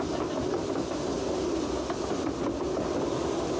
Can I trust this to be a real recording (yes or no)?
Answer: yes